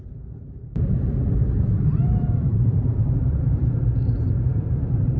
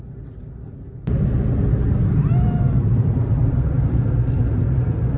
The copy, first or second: first